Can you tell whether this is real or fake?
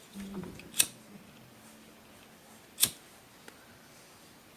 real